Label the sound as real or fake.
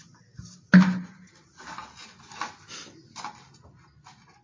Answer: real